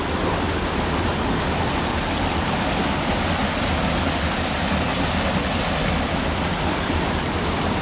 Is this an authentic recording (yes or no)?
yes